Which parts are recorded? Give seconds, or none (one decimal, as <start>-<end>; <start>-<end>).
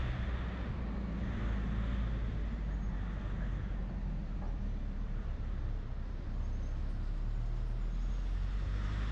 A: 0.0-4.0; 6.4-9.1